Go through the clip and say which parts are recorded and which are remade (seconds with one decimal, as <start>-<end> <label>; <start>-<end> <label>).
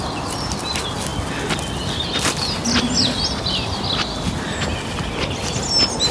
0.0-6.1 recorded